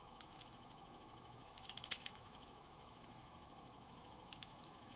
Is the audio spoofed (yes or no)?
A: yes